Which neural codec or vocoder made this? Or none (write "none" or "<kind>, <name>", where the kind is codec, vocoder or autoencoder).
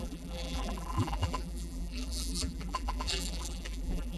vocoder, BigVGAN v2